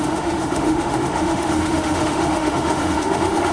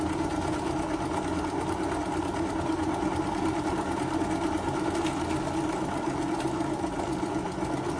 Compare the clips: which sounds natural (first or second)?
second